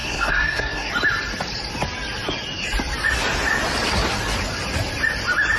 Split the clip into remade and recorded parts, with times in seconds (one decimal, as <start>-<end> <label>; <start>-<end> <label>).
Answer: 0.0-0.9 remade; 0.9-5.6 recorded